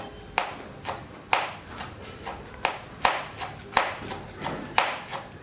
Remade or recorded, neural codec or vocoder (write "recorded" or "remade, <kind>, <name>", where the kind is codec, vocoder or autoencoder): recorded